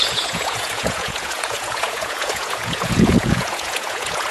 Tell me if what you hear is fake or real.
fake